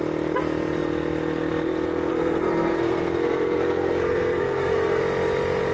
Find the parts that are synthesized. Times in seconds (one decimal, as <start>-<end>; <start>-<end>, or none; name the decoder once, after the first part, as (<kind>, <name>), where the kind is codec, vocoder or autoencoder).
2.1-5.0 (codec, SNAC)